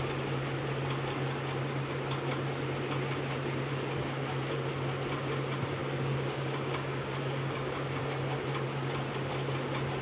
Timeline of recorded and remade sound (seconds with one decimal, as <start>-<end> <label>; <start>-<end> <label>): 0.0-5.8 recorded; 5.8-8.0 remade; 8.0-10.0 recorded